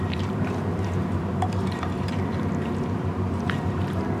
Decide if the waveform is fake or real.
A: fake